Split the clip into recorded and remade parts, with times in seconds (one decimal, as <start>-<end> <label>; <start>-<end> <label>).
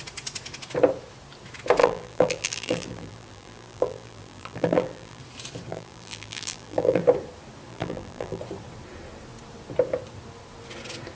0.0-1.8 recorded; 1.8-5.2 remade; 5.2-5.7 recorded; 5.7-7.0 remade; 7.0-7.7 recorded; 7.7-8.4 remade; 8.4-11.2 recorded